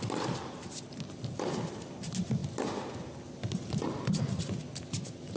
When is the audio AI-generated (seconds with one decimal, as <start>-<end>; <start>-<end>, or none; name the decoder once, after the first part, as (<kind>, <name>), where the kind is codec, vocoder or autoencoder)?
2.4-2.9 (vocoder, BigVGAN v2)